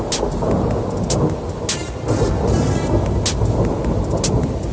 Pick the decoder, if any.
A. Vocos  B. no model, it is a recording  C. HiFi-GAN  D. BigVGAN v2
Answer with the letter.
B